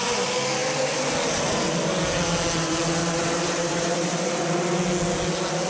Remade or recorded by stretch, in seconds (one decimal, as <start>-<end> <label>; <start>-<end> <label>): 0.0-3.0 recorded; 3.0-4.5 remade; 4.5-5.7 recorded